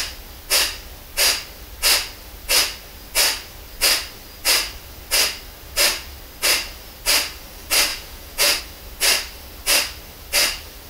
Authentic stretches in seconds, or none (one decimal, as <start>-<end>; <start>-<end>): 0.0-7.9; 8.6-10.9